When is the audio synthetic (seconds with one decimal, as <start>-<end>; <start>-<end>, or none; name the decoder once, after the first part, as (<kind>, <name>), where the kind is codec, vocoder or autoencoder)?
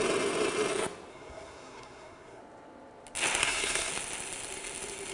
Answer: 1.1-2.4 (codec, SNAC); 3.4-3.9